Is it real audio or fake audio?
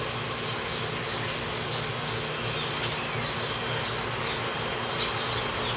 real